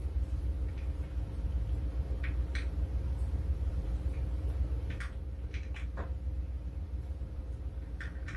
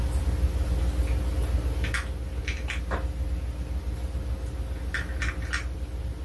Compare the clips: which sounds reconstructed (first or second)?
first